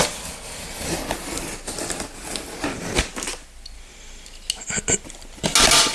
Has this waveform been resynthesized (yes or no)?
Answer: no